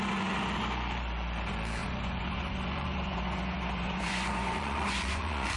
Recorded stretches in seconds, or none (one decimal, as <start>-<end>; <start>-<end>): 0.0-1.8